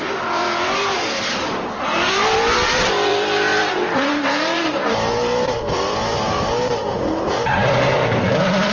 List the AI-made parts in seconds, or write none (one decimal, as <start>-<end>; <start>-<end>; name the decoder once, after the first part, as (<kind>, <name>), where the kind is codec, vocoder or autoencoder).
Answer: 0.0-0.4 (vocoder, BigVGAN v2); 1.6-8.7